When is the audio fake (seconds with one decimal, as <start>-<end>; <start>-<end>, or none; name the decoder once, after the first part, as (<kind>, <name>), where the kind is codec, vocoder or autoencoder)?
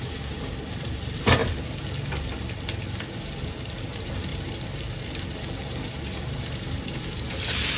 0.0-1.4 (vocoder, BigVGAN v2); 3.1-7.8